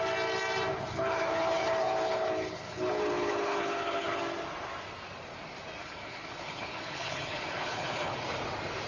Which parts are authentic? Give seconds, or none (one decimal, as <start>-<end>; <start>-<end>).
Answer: 0.0-0.7; 4.2-5.8; 8.2-8.9

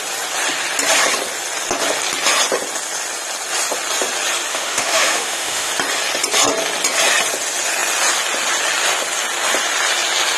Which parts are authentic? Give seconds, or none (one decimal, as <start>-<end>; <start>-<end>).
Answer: 0.0-4.5; 5.7-10.4

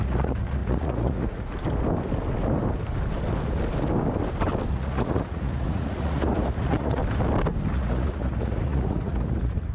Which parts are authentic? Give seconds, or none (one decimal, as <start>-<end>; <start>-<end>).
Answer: 1.5-4.7; 7.0-7.7